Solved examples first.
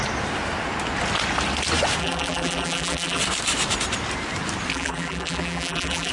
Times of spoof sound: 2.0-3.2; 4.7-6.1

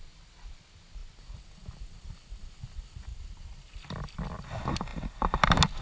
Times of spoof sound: 3.1-3.7